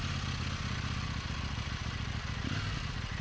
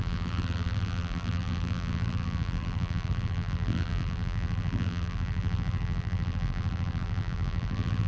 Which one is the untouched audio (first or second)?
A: first